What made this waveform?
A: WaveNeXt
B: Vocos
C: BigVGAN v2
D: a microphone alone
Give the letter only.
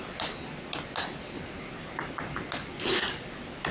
D